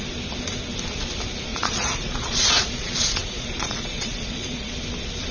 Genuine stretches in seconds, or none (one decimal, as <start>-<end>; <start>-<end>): 0.0-1.5; 4.7-5.3